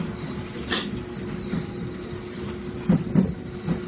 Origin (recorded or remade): recorded